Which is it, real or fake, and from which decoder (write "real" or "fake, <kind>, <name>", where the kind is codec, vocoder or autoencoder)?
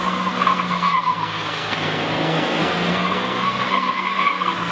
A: fake, codec, SNAC